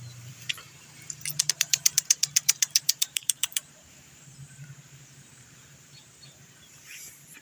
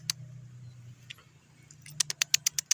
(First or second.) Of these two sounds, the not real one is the first